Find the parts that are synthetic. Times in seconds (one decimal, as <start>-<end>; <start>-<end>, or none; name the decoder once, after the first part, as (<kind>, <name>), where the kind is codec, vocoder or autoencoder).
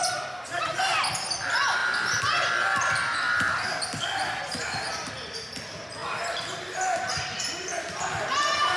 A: 6.0-7.4 (vocoder, BigVGAN v2)